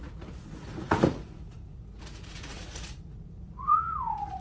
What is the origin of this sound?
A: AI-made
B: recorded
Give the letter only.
A